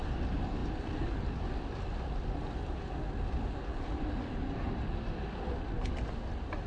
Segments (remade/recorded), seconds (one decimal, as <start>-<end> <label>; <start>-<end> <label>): 0.0-6.7 recorded